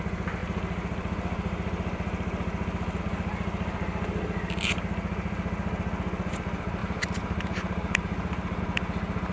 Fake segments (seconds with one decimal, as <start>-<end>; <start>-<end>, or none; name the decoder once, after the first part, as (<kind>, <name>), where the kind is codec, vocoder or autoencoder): 6.8-8.6 (vocoder, BigVGAN v2)